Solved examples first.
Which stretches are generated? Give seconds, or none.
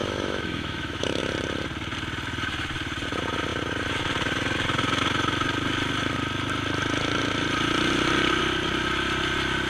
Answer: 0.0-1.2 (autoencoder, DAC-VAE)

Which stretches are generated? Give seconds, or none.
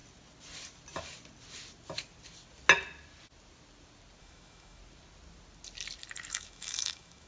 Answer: 4.2-4.8 (autoencoder, DAC-VAE); 6.3-7.3